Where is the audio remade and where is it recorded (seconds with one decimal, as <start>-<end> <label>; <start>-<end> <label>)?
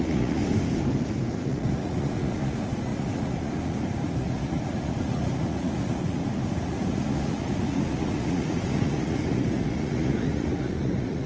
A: 0.0-0.4 remade; 0.4-1.3 recorded; 1.3-11.3 remade